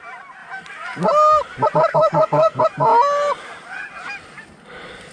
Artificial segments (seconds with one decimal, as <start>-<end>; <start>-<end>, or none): 1.9-2.6